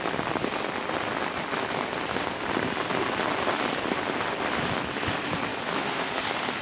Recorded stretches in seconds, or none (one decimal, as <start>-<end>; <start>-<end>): 0.0-5.5; 6.1-6.6